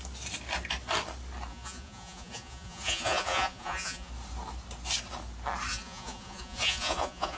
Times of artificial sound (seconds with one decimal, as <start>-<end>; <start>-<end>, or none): 1.5-4.1; 5.7-7.4